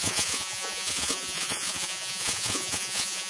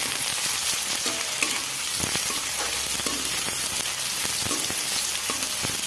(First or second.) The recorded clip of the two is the second